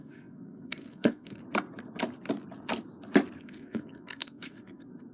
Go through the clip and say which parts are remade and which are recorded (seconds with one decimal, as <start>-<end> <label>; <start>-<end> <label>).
0.0-1.4 remade; 1.4-3.4 recorded; 3.4-5.1 remade